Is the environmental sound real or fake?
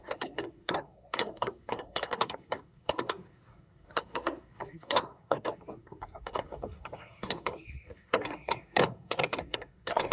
fake